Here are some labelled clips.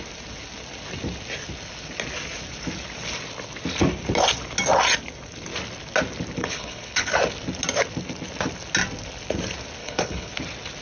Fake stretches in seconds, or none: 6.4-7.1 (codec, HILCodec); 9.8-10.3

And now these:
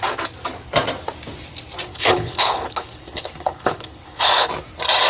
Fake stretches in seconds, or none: 1.9-4.5 (codec, HILCodec)

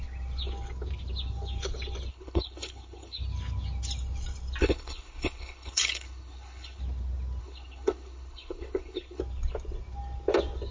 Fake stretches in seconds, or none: 2.1-3.2 (codec, HILCodec); 4.6-6.8; 7.4-9.2

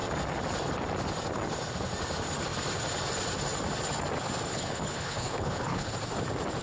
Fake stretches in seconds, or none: 4.5-5.9 (codec, HILCodec)